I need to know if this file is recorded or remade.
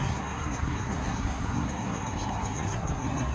remade